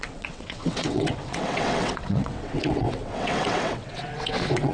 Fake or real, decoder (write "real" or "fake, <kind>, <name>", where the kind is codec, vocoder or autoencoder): fake, vocoder, WaveNeXt